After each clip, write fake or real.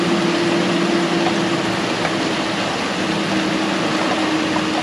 real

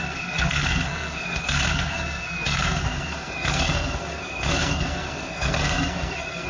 fake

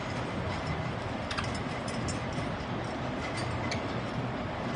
real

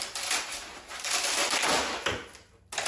real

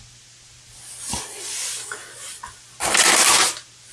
real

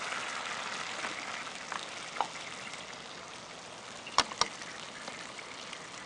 real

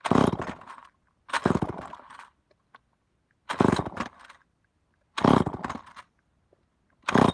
real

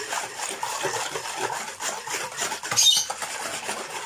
real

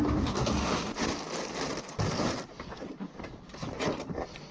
real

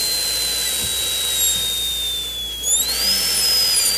real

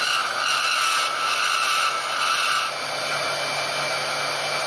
real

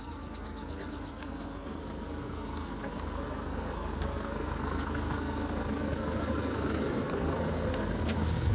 fake